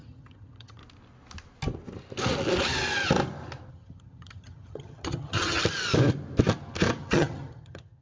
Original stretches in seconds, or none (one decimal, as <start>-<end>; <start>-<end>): 0.8-3.7; 5.6-7.0